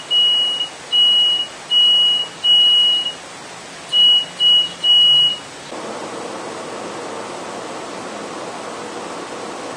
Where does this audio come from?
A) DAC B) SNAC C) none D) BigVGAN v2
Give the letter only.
C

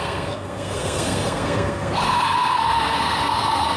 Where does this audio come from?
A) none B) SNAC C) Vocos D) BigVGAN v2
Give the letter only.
B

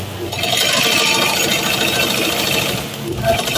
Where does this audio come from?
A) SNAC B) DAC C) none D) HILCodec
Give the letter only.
C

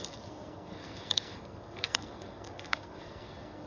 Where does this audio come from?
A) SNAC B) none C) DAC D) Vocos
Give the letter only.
A